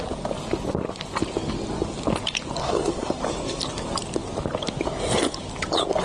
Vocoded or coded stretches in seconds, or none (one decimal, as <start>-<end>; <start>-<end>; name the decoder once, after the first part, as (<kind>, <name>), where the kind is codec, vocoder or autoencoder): 2.6-3.2 (codec, SNAC)